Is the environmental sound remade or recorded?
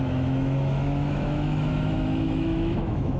remade